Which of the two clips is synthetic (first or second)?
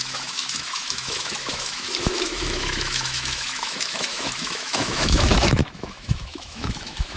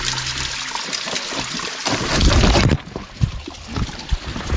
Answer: first